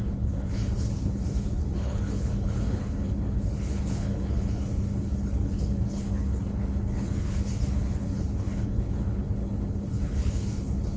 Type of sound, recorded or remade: remade